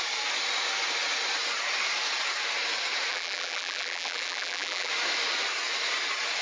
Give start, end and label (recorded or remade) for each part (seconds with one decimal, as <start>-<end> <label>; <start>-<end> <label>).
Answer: 0.0-3.1 recorded; 3.1-4.9 remade; 4.9-6.4 recorded